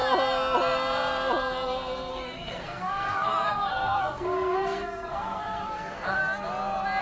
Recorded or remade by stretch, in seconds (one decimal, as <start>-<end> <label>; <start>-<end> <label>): 0.0-2.1 recorded; 2.1-6.2 remade; 6.2-7.0 recorded